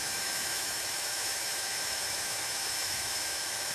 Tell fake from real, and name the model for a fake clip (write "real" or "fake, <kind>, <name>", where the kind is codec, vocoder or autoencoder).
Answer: fake, autoencoder, DAC-VAE